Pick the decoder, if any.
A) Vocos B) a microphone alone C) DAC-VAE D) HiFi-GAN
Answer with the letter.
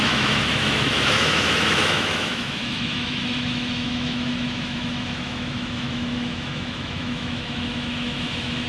C